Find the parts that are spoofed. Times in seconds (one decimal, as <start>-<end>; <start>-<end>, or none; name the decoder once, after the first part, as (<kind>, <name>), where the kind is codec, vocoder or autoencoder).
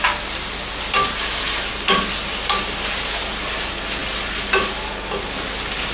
none